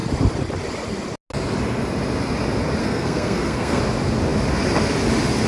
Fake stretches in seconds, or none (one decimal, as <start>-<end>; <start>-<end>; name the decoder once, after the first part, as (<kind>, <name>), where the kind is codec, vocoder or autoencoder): 2.8-3.8 (codec, SNAC)